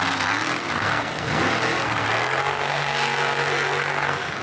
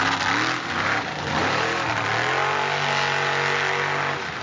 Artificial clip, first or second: first